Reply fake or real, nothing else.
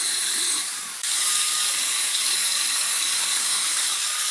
fake